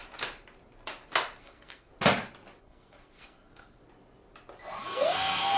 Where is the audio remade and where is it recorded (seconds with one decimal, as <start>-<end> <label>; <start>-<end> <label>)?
0.0-1.4 recorded; 1.4-1.9 remade; 1.9-2.6 recorded; 2.6-3.8 remade; 3.8-4.8 recorded; 4.8-5.6 remade